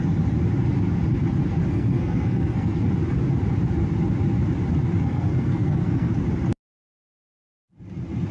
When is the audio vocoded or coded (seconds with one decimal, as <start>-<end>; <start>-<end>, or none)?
1.6-2.9; 5.0-6.1